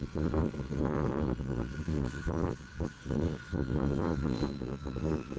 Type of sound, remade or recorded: remade